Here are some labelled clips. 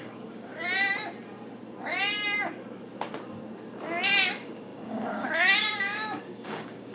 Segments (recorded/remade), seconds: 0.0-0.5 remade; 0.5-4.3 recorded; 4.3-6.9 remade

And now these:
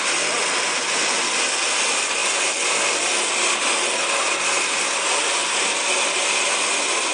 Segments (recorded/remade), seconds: 0.0-7.1 recorded

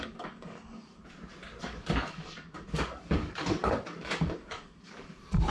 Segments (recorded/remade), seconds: 0.0-1.0 remade; 1.0-1.6 recorded; 1.6-5.5 remade

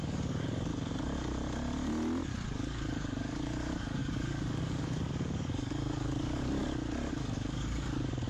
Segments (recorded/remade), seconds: 0.0-0.7 remade; 0.7-2.5 recorded; 2.5-6.6 remade; 6.6-7.1 recorded; 7.1-8.3 remade

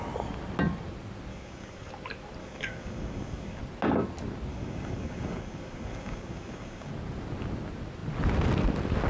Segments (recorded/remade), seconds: 0.0-1.3 recorded; 1.3-1.9 remade; 1.9-2.4 recorded; 2.4-3.6 remade; 3.6-4.5 recorded; 4.5-6.9 remade; 6.9-9.1 recorded